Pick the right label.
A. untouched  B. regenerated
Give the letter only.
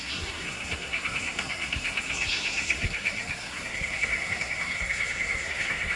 B